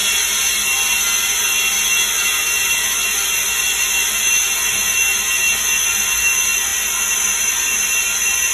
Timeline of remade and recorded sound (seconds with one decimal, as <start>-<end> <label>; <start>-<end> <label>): 0.0-0.5 remade; 0.5-6.7 recorded; 6.7-7.5 remade; 7.5-8.5 recorded